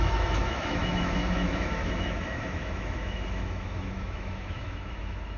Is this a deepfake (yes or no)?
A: yes